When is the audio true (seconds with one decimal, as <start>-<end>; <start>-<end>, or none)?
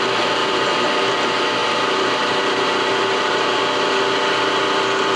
0.0-0.4; 0.9-1.6; 3.6-5.2